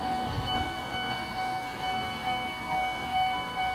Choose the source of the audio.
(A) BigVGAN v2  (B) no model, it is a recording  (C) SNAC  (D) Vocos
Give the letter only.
C